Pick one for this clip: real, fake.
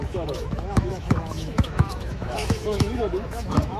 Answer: fake